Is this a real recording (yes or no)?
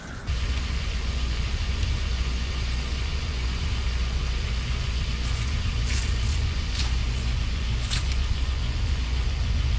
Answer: no